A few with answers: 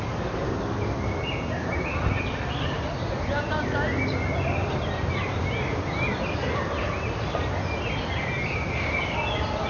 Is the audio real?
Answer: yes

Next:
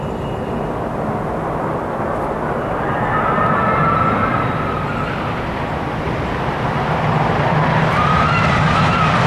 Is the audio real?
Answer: yes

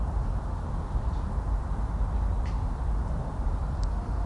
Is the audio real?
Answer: yes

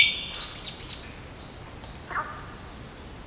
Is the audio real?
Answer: yes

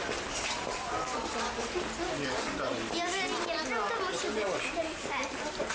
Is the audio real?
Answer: yes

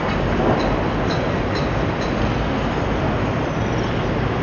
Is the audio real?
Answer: yes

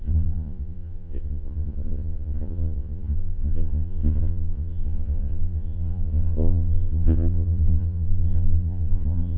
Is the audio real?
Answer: no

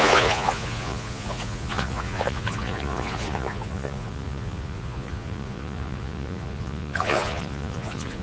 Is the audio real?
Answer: no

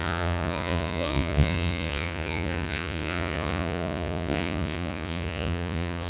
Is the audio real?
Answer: no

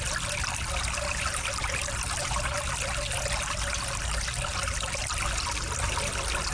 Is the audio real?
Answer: yes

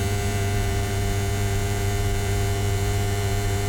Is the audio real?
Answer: no